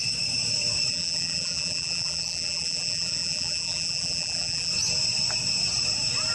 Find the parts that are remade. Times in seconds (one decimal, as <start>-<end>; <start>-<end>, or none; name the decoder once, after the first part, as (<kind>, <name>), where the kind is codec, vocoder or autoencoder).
0.9-4.7 (vocoder, BigVGAN v2)